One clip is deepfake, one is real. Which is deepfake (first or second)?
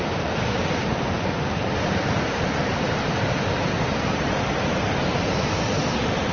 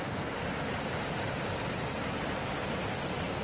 first